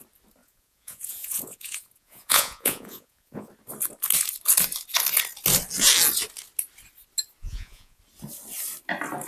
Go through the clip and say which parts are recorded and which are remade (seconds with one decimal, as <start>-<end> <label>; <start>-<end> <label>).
0.0-0.4 recorded; 0.4-3.5 remade; 3.5-7.4 recorded; 7.4-8.0 remade; 8.0-9.3 recorded